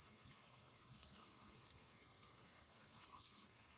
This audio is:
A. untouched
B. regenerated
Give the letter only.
B